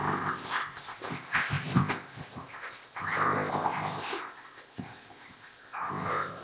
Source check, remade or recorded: remade